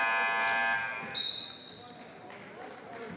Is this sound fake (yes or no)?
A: no